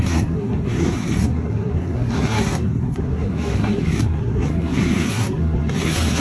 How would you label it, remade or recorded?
remade